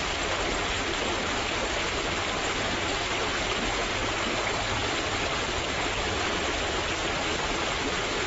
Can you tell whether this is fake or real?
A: real